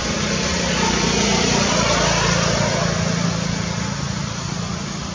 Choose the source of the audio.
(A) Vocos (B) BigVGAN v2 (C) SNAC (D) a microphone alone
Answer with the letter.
D